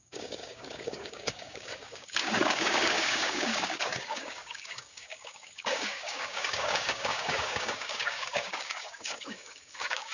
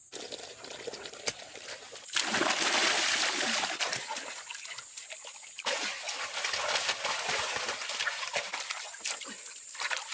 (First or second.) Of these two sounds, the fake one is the first